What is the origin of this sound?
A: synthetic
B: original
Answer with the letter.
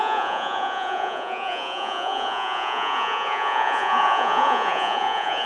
A